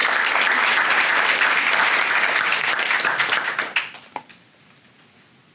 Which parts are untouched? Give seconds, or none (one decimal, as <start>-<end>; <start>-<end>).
2.1-5.5